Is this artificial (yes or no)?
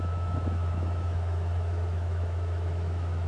yes